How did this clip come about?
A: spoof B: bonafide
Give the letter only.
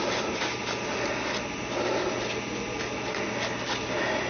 B